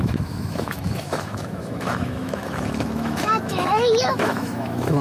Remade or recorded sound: remade